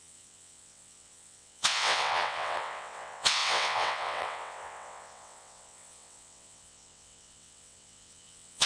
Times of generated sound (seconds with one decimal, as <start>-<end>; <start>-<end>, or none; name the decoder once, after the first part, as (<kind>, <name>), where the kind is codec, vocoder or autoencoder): 0.0-8.7 (vocoder, WaveNeXt)